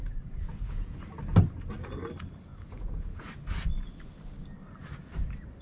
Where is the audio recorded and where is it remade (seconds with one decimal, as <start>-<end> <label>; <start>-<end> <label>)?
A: 0.0-1.0 remade; 1.0-2.5 recorded; 2.5-3.2 remade; 3.2-5.6 recorded